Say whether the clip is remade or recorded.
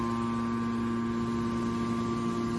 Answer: recorded